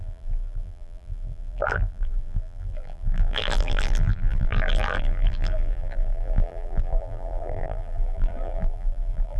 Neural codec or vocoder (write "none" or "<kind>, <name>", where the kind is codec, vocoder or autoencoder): vocoder, BigVGAN v2